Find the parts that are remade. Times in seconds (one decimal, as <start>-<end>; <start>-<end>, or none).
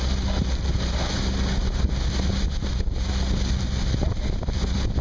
none